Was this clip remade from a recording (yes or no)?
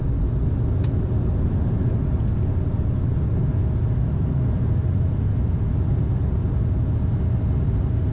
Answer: no